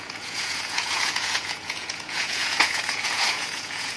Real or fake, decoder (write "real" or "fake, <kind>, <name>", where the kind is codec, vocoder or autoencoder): fake, vocoder, Vocos